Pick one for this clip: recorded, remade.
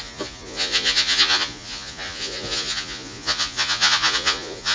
remade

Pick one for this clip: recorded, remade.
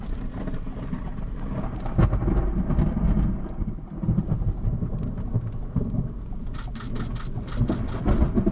recorded